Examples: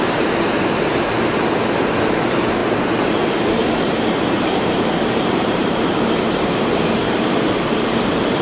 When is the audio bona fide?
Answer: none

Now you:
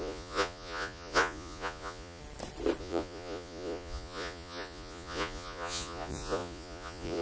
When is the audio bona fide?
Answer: 2.2-2.8

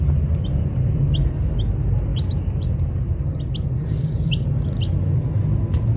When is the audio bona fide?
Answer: 0.0-6.0